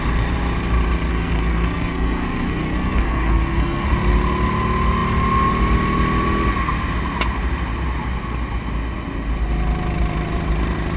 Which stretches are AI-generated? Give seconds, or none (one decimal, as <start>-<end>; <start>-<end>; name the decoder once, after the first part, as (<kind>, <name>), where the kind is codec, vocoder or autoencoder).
1.1-3.9 (codec, SNAC)